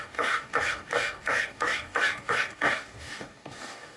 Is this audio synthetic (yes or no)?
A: yes